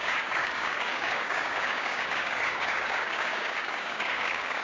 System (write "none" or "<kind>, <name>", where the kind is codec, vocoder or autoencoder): codec, DAC